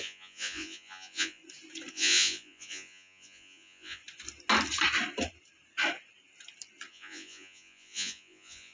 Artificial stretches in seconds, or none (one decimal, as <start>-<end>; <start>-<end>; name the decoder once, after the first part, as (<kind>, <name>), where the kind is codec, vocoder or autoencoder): 0.0-1.4 (vocoder, Vocos); 1.9-4.0; 6.9-8.7